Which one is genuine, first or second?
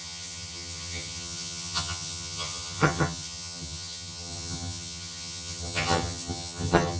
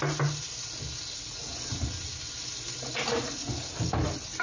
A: second